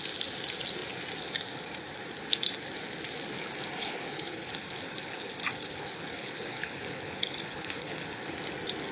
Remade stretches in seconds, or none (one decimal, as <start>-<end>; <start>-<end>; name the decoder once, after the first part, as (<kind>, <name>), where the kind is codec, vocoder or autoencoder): 3.8-8.2 (codec, HILCodec)